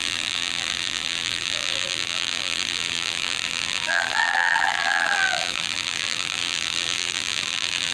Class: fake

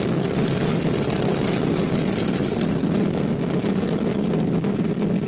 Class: real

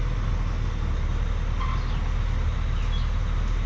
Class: real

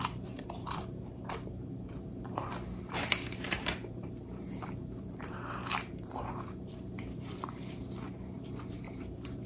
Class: fake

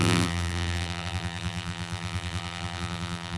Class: fake